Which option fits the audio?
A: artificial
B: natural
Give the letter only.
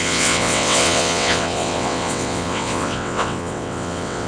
A